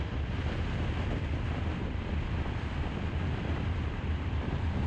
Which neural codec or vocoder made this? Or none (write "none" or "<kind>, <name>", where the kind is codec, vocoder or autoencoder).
vocoder, BigVGAN v2